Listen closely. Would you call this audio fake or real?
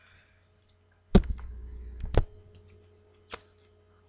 real